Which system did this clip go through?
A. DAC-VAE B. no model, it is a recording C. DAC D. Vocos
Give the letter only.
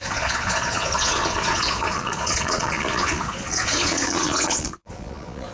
D